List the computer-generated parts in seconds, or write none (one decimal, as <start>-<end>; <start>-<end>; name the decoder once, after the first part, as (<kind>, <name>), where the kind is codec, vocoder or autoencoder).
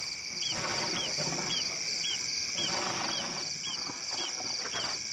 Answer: none